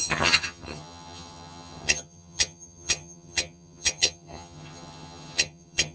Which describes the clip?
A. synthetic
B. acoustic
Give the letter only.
A